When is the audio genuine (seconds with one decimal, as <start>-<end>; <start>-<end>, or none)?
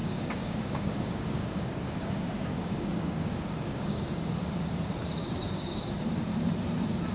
4.3-5.2; 5.8-7.1